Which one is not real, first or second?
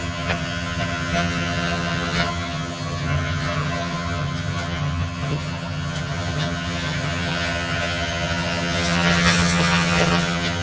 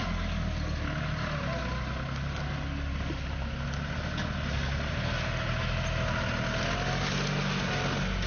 first